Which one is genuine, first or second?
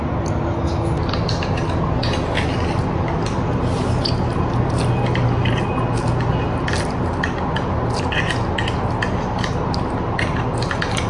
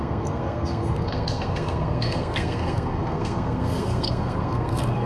first